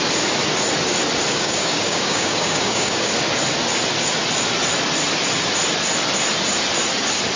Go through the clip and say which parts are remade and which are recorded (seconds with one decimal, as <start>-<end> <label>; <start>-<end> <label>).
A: 0.0-1.3 recorded; 1.3-3.1 remade; 3.1-7.4 recorded